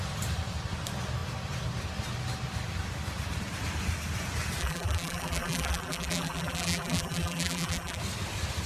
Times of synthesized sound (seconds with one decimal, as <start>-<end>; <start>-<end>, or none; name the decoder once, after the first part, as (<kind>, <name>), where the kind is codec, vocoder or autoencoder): 4.6-8.0 (vocoder, BigVGAN v2)